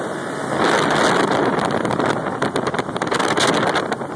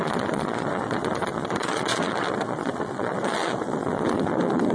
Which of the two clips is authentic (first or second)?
first